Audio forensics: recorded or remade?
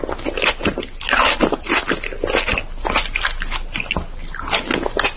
recorded